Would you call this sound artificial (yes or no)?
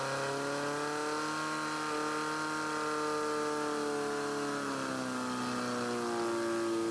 no